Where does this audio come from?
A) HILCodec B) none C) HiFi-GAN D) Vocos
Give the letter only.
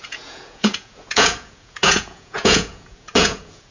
D